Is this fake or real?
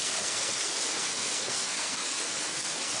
fake